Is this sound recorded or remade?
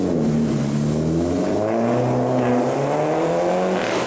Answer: recorded